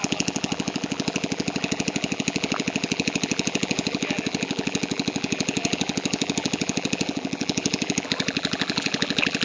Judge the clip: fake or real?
fake